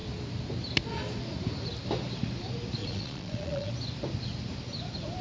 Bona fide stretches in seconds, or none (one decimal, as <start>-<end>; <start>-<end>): 0.0-2.8; 3.7-5.2